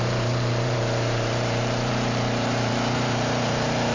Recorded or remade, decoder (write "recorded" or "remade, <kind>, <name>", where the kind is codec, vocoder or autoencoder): remade, vocoder, BigVGAN v2